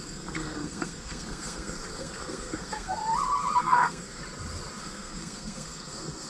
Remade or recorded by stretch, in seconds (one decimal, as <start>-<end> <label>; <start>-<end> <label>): 0.0-3.0 remade; 3.0-3.6 recorded; 3.6-4.2 remade; 4.2-4.8 recorded; 4.8-6.3 remade